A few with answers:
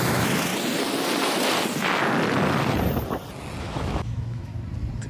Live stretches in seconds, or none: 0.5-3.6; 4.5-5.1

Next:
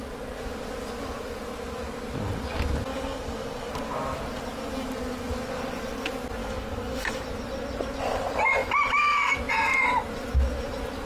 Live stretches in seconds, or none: 0.0-2.9; 3.7-6.4; 7.2-11.1

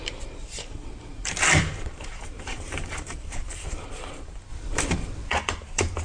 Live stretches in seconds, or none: none

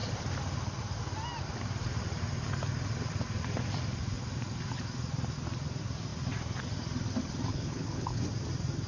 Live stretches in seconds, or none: 0.0-7.5; 8.2-8.9

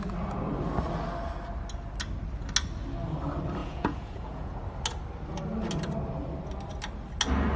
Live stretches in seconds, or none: 0.0-3.6; 4.6-7.6

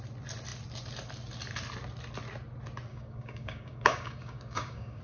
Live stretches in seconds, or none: 0.0-2.9

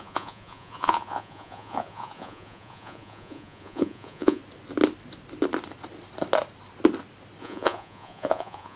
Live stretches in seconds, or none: 4.4-7.4